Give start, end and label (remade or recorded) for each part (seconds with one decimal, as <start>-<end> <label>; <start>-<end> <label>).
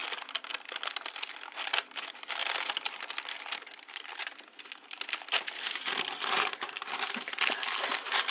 0.0-8.3 recorded